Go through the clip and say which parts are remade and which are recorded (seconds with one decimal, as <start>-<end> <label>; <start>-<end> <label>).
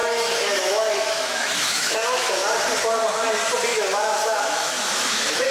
0.0-2.3 remade; 2.3-3.7 recorded; 3.7-5.5 remade